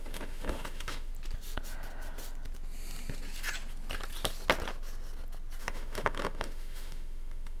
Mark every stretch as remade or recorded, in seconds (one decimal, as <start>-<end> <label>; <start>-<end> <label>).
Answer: 0.0-1.1 remade; 1.1-5.6 recorded; 5.6-7.6 remade